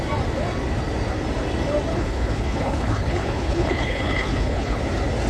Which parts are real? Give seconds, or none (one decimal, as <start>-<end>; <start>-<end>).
0.0-1.9; 4.8-5.3